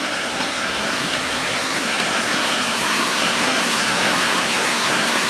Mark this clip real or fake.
fake